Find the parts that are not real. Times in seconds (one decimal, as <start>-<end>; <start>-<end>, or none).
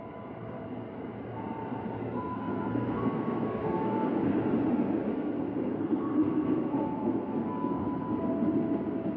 2.0-4.4; 5.1-8.0